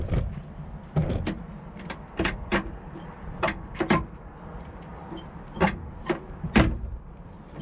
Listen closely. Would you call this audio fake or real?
real